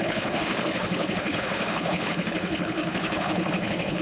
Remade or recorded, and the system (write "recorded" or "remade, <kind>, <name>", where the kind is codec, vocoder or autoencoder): remade, codec, HILCodec